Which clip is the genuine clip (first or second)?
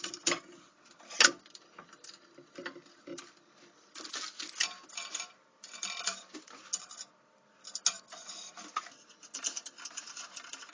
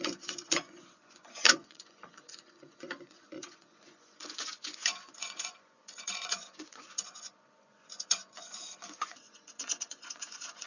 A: first